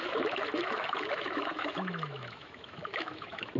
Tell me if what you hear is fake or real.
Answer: fake